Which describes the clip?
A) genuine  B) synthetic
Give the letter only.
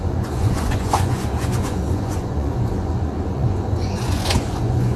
B